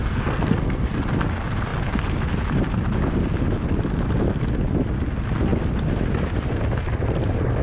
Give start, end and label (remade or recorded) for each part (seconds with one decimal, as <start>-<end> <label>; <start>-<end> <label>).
0.0-0.9 remade; 0.9-7.6 recorded